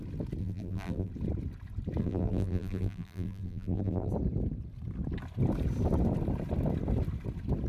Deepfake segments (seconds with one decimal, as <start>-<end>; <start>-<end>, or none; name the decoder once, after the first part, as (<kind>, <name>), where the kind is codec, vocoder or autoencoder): 0.4-1.1 (vocoder, BigVGAN v2); 2.0-4.1